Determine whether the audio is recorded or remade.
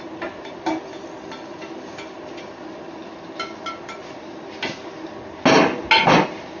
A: recorded